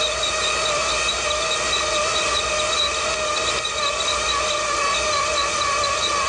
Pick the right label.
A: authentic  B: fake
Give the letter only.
A